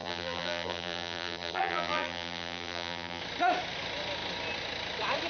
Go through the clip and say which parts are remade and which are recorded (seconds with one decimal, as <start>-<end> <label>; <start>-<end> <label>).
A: 0.0-3.2 remade; 3.2-5.3 recorded

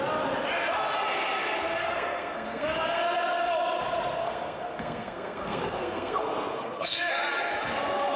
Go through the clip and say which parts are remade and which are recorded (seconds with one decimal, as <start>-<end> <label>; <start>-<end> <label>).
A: 0.0-1.8 recorded; 1.8-3.0 remade; 3.0-4.2 recorded; 4.2-7.1 remade; 7.1-8.2 recorded

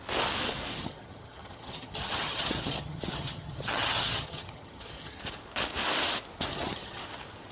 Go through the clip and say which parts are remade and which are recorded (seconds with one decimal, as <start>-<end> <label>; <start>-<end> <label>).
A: 0.0-0.7 recorded; 0.7-5.2 remade; 5.2-6.5 recorded; 6.5-7.0 remade; 7.0-7.5 recorded

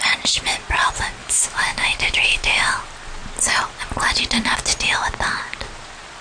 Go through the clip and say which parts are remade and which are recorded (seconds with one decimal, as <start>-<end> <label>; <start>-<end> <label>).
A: 0.0-1.2 recorded; 1.2-2.8 remade; 2.8-6.2 recorded

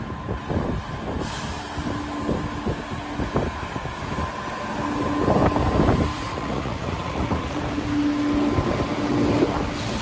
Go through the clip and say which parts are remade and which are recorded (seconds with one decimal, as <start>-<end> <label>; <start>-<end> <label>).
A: 0.0-6.1 recorded; 6.1-7.6 remade; 7.6-10.0 recorded